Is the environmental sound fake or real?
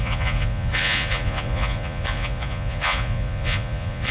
fake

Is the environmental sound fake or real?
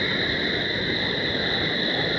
real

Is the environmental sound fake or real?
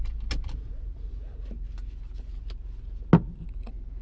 real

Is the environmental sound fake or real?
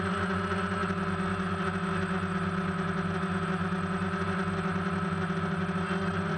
real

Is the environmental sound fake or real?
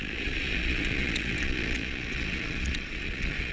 fake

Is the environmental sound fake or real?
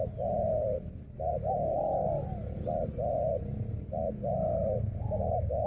real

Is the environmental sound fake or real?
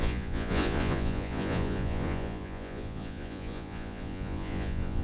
fake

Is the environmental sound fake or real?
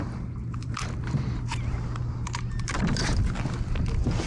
real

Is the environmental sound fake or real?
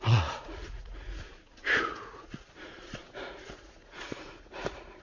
fake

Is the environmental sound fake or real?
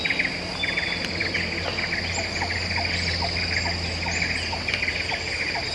real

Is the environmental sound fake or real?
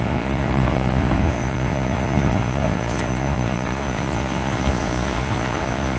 fake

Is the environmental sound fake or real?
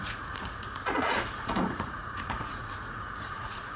fake